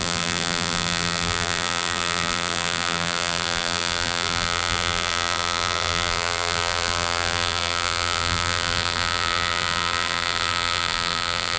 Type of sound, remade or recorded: remade